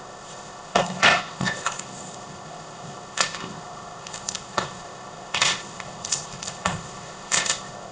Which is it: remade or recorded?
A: remade